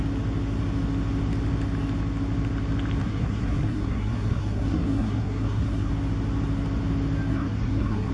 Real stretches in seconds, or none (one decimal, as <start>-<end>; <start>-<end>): 0.0-3.0; 5.9-7.3